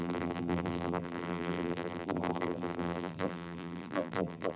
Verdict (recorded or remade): remade